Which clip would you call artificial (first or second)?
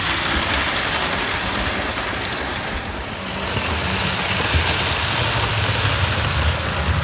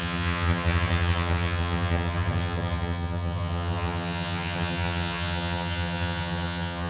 second